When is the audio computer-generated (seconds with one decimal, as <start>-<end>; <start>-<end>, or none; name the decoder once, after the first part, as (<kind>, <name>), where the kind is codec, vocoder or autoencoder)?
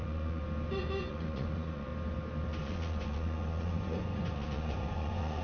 0.0-0.4 (vocoder, Vocos); 1.1-1.9; 2.6-5.4